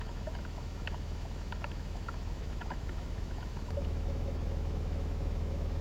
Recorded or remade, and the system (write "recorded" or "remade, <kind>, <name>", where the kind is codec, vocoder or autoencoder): remade, autoencoder, DAC-VAE